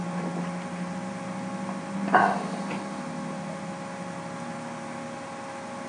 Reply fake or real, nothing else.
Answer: real